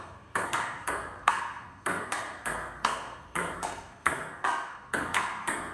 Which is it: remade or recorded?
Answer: remade